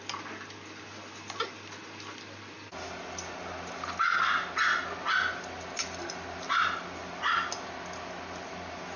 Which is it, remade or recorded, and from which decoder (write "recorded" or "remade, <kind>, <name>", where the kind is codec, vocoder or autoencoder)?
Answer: recorded